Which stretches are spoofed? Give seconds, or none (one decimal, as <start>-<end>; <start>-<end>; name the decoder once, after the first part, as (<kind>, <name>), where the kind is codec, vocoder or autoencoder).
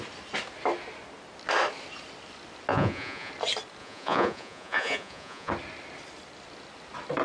2.7-3.3 (vocoder, Vocos); 3.8-5.5